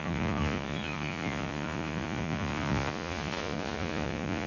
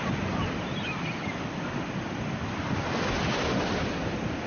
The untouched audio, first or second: second